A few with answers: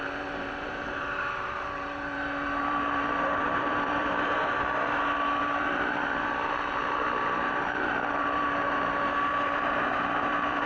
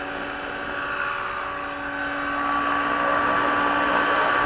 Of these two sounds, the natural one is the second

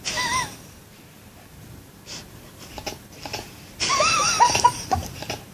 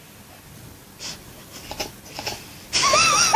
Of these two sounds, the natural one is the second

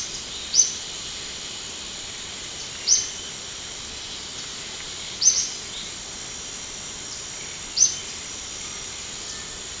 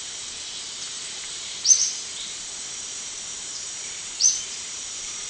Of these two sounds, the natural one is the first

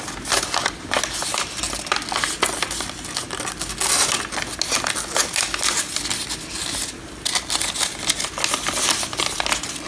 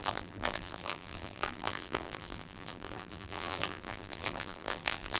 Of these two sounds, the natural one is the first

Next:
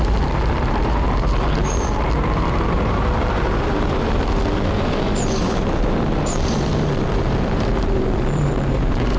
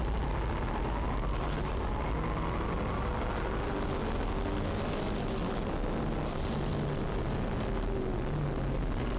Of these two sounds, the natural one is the second